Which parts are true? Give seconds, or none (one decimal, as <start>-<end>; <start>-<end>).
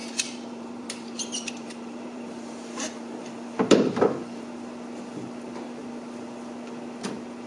4.5-7.5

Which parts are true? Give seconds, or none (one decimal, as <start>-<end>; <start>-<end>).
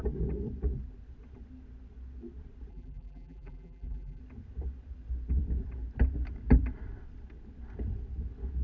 0.0-2.7; 4.2-8.6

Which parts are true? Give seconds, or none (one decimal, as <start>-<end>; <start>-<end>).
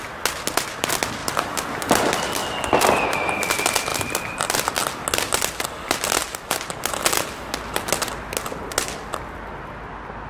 0.0-1.2; 3.5-3.9; 4.7-6.2; 6.7-10.3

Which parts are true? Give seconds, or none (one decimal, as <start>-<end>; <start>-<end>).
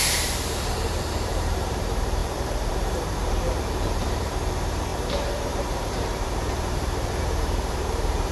none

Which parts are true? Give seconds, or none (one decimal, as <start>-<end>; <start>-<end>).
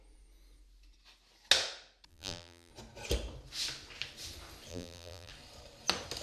0.0-2.1; 2.7-4.7; 5.3-6.2